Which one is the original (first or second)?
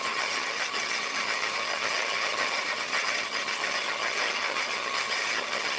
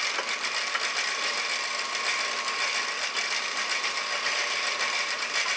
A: second